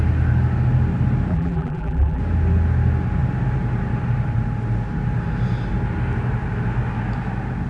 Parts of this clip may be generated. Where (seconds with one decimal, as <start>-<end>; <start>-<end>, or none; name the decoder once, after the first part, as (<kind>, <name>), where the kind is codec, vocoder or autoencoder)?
1.3-2.2 (vocoder, BigVGAN v2)